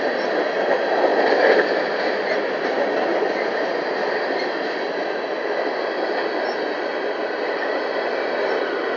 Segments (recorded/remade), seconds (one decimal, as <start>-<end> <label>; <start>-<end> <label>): 0.0-9.0 recorded